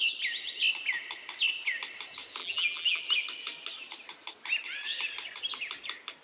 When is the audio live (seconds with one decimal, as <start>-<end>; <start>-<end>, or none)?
0.0-2.4; 3.0-6.2

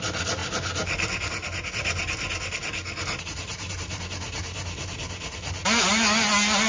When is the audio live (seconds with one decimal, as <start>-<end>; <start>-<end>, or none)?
0.0-6.7